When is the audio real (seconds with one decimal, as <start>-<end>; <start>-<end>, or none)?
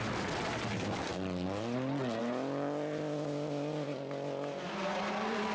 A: 0.0-5.5